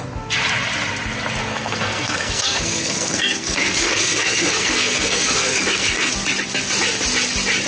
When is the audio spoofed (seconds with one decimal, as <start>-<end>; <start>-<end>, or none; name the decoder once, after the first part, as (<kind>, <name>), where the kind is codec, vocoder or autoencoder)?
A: 1.5-6.1 (codec, SNAC)